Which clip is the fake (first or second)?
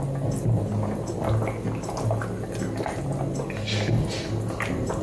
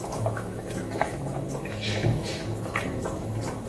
second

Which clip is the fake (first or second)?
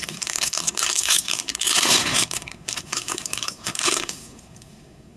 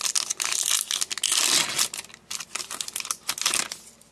first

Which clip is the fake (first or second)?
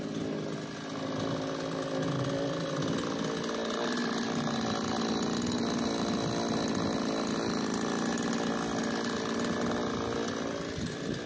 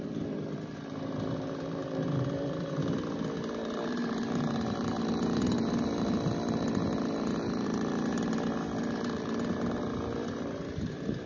second